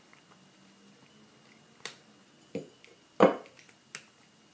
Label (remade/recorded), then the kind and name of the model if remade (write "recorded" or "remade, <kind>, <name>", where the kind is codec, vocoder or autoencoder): recorded